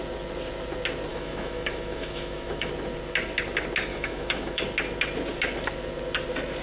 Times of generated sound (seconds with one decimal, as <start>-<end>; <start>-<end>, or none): 1.1-2.7; 3.9-4.6